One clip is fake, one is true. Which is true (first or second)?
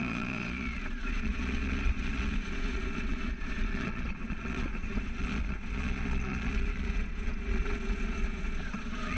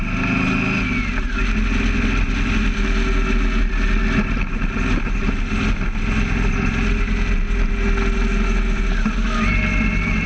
second